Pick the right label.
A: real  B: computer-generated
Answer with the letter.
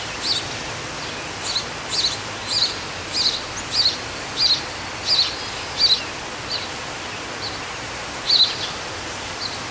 A